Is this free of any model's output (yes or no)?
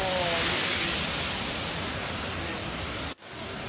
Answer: yes